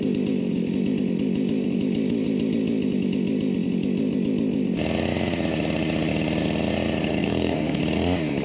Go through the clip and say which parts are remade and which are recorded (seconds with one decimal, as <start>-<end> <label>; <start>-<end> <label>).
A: 0.0-7.2 recorded; 7.2-7.8 remade; 7.8-8.4 recorded